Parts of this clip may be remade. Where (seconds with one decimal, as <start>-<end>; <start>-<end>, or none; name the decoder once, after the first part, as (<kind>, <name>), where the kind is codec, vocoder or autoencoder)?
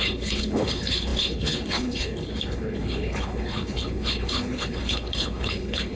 0.0-6.0 (codec, HILCodec)